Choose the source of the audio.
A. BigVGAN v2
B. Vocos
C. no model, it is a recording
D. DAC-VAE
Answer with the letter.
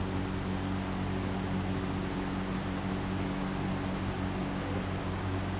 C